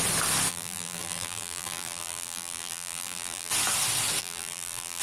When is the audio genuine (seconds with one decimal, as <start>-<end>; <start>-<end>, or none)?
0.0-0.5; 3.5-4.2